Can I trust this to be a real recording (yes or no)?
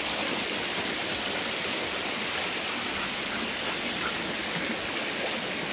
yes